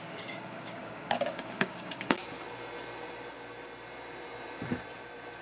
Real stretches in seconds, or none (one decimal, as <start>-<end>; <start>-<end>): 2.2-5.4